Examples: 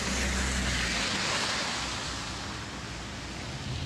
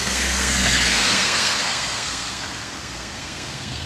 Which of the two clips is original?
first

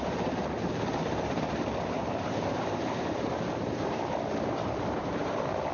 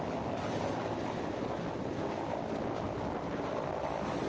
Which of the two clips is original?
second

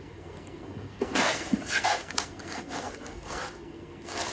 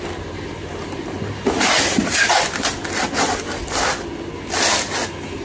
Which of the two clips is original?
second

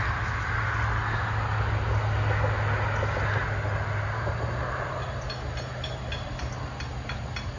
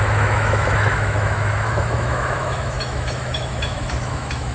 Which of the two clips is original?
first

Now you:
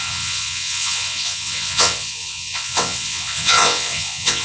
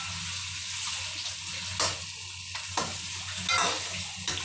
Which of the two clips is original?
second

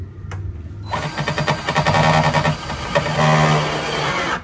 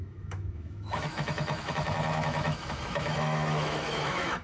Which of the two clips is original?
first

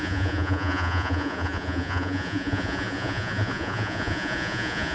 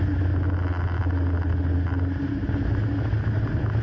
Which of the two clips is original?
second